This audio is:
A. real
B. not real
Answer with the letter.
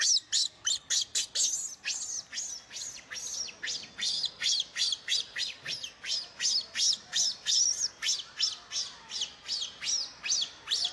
A